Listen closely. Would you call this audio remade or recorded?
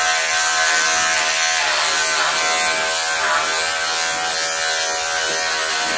recorded